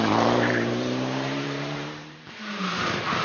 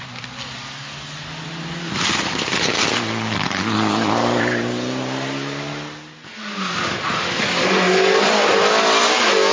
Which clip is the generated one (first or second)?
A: first